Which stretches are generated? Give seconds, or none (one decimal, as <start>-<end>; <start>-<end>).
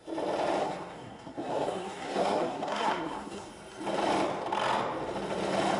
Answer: 0.6-3.5